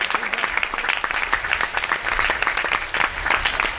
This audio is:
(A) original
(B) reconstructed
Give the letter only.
B